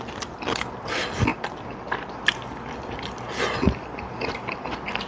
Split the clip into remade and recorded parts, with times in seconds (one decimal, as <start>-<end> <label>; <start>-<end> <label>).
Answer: 0.0-5.1 recorded